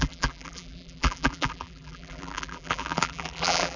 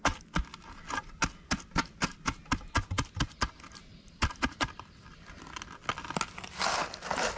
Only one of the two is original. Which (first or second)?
second